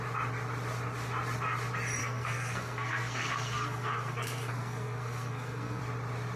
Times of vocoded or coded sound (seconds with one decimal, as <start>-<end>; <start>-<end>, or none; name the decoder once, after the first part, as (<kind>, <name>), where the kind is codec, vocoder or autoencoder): 2.0-5.8 (codec, SNAC)